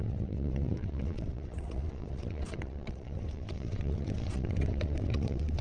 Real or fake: fake